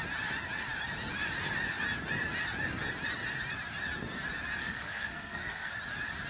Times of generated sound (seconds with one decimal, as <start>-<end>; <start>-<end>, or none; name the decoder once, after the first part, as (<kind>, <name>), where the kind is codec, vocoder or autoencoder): 4.6-5.7 (codec, SNAC)